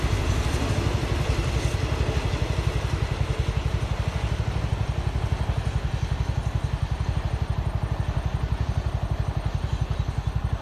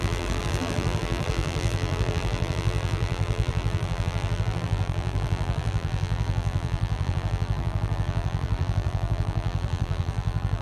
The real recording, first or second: first